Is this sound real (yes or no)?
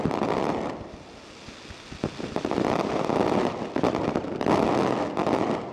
yes